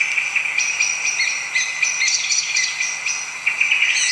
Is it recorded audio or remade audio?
recorded